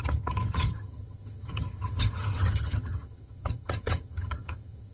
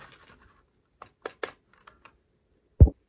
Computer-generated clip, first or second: first